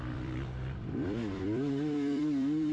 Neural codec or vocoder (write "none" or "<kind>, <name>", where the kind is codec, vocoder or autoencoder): vocoder, BigVGAN v2